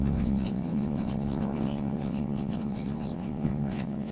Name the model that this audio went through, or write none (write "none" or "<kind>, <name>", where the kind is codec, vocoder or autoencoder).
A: vocoder, WaveNeXt